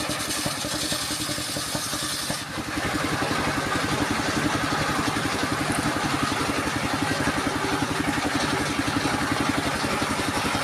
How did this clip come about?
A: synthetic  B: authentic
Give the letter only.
B